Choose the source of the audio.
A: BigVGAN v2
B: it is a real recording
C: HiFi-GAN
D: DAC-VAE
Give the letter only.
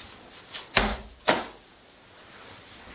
B